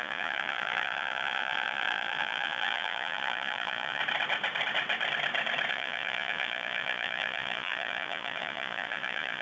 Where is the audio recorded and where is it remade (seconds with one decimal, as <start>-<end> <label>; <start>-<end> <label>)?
0.0-4.0 remade; 4.0-5.7 recorded; 5.7-9.4 remade